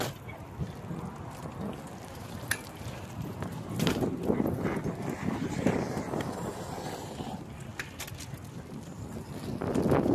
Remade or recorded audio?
recorded